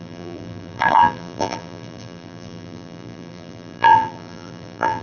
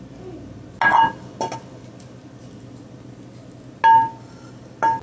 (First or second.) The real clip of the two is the second